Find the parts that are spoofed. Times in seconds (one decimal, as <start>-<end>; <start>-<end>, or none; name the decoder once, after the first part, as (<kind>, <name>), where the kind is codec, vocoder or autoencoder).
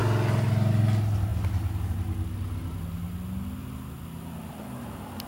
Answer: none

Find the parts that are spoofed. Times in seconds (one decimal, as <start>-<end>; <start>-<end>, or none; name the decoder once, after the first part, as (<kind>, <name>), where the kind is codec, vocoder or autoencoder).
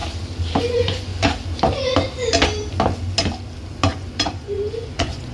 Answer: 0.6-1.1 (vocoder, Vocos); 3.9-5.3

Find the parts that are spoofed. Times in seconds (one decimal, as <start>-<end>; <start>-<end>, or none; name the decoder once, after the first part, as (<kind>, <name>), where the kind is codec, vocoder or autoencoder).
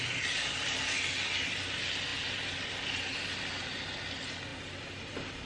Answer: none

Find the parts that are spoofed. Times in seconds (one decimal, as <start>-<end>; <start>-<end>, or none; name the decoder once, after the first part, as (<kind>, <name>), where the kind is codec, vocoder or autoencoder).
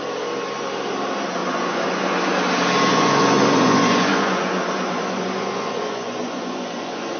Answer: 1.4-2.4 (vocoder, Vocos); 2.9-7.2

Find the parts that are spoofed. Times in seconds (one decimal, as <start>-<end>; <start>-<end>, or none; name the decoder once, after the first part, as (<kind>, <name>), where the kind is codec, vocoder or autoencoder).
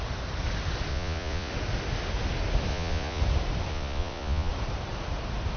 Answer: 0.9-1.5 (vocoder, Vocos); 2.7-3.2; 3.7-4.5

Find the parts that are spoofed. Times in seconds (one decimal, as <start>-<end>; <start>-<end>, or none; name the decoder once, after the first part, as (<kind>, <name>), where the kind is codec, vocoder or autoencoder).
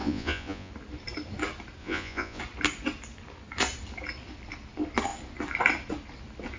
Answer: 0.0-0.7 (vocoder, Vocos); 1.8-2.4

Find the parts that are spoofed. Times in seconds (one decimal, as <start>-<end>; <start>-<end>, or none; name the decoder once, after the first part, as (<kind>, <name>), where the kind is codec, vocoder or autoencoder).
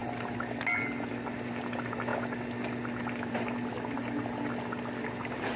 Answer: none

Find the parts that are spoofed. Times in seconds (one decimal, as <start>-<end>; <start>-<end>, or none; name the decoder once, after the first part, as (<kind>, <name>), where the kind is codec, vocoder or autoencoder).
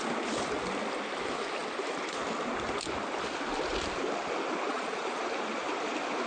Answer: 4.7-5.2 (vocoder, Vocos)